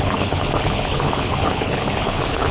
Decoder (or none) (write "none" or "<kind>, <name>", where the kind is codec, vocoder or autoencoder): codec, HILCodec